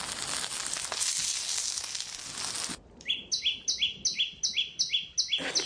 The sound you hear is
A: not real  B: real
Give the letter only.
B